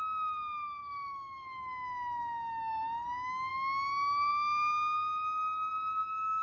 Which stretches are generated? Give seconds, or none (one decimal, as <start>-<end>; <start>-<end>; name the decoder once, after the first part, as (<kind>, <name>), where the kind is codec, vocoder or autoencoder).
0.8-1.4 (autoencoder, DAC-VAE)